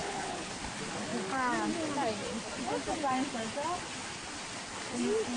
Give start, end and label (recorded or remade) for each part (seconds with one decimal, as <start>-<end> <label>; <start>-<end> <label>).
0.0-0.5 remade; 0.5-5.4 recorded